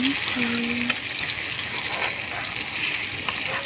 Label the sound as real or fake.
real